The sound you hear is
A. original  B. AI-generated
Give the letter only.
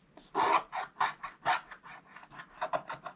A